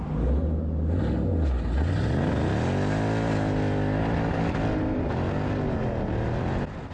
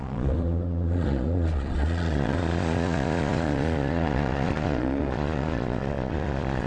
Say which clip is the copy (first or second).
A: second